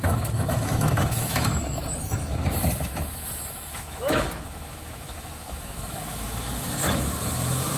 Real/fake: fake